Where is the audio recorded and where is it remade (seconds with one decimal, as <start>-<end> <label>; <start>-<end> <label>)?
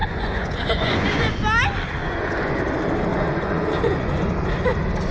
0.0-1.3 remade; 1.3-2.0 recorded; 2.0-2.6 remade; 2.6-3.1 recorded; 3.1-4.2 remade; 4.2-5.1 recorded